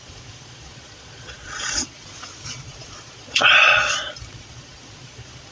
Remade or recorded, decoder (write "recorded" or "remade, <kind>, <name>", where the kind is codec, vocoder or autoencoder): remade, vocoder, Vocos